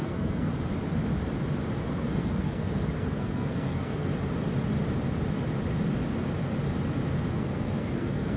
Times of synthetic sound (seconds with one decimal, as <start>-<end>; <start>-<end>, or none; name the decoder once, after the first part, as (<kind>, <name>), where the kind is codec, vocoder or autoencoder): 0.0-0.5 (codec, SNAC); 1.9-4.1; 7.3-8.4